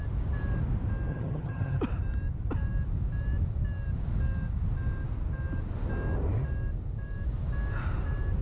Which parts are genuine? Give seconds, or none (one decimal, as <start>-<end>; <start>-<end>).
0.0-1.1; 1.8-8.4